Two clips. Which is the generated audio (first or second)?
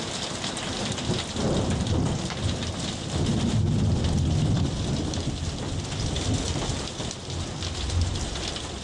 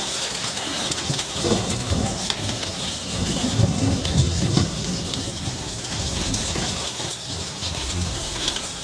second